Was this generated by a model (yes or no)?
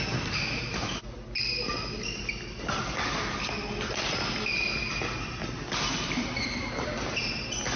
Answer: no